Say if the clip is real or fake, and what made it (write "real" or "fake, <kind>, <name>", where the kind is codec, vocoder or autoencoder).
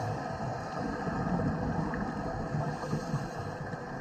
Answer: real